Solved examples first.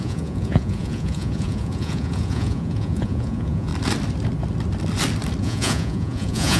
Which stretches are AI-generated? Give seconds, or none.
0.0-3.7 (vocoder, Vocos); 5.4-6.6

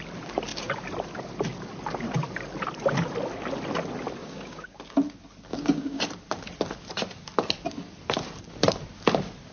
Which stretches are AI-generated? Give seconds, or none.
4.2-4.8 (codec, DAC); 5.5-6.0

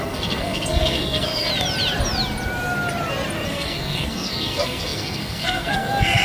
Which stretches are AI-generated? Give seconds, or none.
0.0-1.5 (codec, SNAC); 3.5-6.2

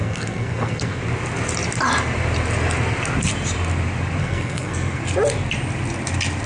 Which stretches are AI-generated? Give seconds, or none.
0.0-1.0 (codec, SNAC); 4.2-5.0